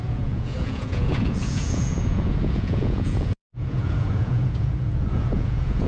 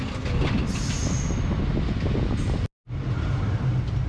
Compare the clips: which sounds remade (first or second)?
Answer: first